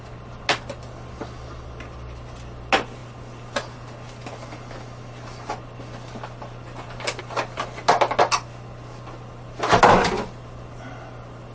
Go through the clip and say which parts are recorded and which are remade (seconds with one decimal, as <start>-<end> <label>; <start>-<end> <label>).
0.0-11.5 recorded